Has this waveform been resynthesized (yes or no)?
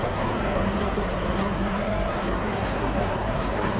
yes